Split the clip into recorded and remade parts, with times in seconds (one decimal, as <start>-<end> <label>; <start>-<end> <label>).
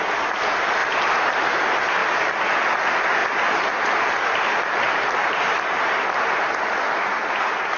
0.0-0.8 recorded; 0.8-1.3 remade; 1.3-3.2 recorded; 3.2-6.4 remade; 6.4-7.8 recorded